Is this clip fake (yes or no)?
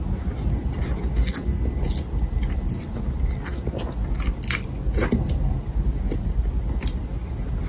no